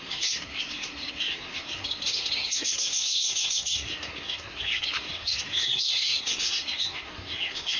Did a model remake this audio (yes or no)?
yes